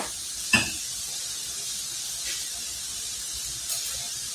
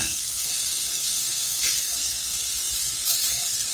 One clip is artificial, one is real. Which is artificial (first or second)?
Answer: second